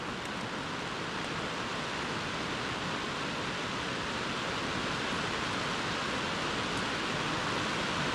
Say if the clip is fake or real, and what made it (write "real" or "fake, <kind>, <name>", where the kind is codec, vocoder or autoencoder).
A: real